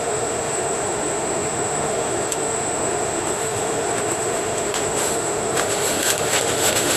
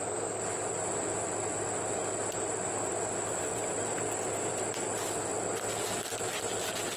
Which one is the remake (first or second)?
first